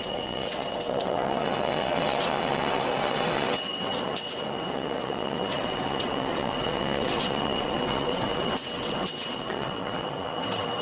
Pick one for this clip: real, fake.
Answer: fake